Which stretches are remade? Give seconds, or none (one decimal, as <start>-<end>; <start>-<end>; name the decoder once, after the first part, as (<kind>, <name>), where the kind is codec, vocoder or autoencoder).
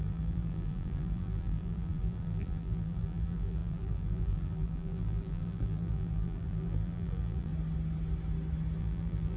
0.0-7.5 (vocoder, BigVGAN v2); 8.8-9.4